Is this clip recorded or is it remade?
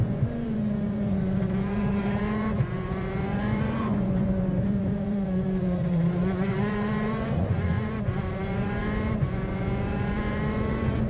remade